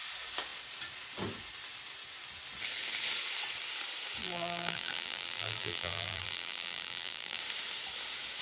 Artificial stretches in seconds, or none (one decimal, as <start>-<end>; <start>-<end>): 4.2-7.4